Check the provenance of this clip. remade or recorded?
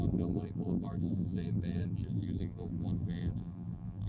remade